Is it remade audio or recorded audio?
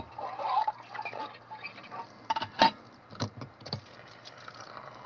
recorded